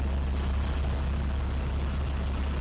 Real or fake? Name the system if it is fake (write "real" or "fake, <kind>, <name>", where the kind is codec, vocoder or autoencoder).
real